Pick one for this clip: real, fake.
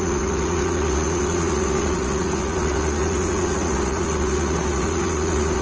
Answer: fake